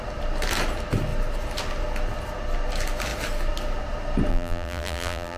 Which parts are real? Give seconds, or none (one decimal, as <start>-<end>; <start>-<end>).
0.0-4.3